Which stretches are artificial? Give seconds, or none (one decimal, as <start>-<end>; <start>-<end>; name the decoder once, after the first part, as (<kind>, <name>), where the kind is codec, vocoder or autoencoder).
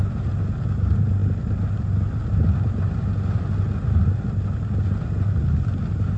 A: none